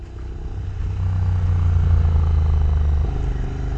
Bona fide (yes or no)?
yes